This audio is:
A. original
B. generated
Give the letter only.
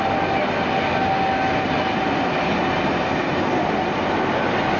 A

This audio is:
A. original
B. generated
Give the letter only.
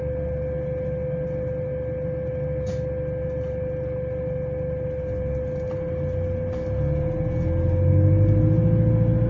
A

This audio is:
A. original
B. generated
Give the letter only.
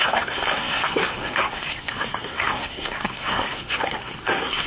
B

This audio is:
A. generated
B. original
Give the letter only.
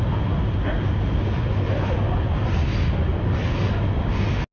B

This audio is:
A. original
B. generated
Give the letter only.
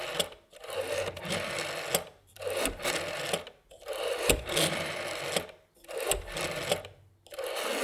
A